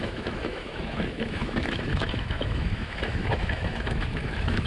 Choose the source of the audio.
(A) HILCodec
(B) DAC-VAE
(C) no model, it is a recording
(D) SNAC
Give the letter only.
B